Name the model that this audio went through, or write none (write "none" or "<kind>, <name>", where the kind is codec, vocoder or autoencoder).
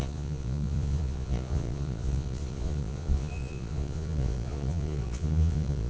vocoder, Vocos